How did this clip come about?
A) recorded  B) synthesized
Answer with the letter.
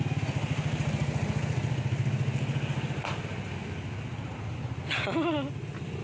A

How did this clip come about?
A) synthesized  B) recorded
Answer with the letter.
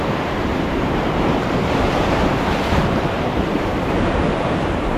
A